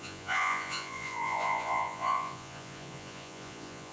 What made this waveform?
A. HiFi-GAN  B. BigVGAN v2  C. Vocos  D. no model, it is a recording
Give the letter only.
C